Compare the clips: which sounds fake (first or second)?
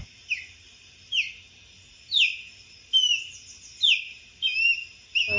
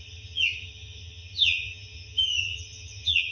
second